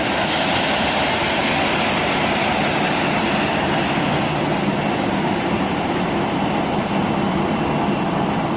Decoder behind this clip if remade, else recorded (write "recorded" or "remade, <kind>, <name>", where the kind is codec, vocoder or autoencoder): recorded